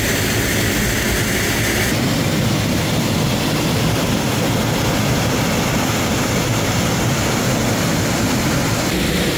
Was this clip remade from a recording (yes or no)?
no